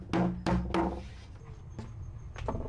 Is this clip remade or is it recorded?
recorded